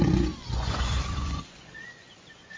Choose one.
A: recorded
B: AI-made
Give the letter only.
B